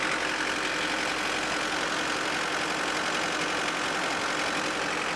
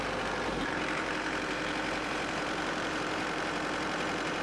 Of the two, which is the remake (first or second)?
second